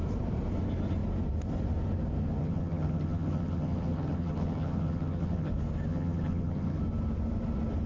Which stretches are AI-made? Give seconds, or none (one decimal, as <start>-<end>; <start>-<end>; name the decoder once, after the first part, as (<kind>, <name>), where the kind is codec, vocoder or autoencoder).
2.4-5.5 (vocoder, HiFi-GAN); 5.9-6.8